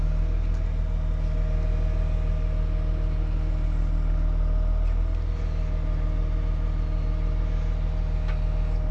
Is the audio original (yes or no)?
yes